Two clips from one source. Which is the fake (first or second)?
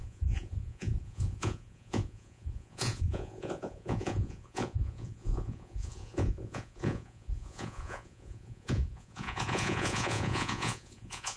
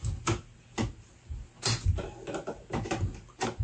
first